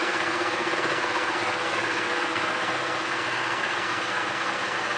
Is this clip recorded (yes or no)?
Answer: no